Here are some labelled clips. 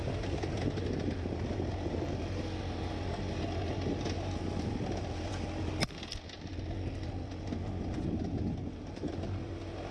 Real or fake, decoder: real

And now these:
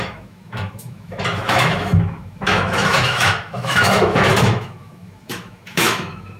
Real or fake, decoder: fake, autoencoder, DAC-VAE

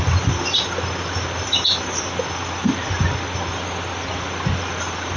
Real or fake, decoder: real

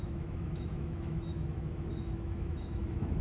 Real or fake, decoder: fake, autoencoder, DAC-VAE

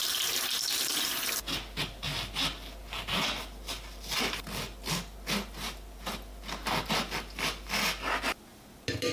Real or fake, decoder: real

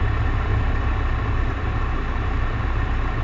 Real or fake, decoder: real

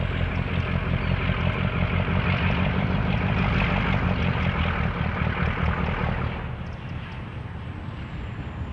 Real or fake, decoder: real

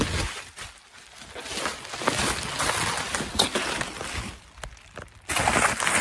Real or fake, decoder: real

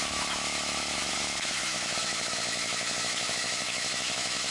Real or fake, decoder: fake, autoencoder, DAC-VAE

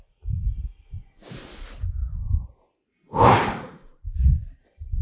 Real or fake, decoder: real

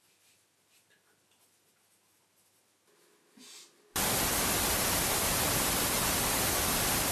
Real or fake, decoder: real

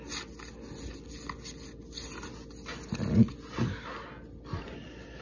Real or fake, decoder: real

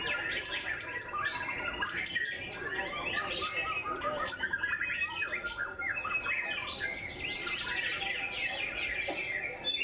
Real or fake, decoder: real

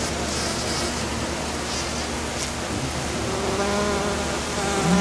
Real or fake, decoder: real